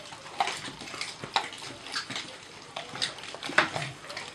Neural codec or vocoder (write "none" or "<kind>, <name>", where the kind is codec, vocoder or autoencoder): none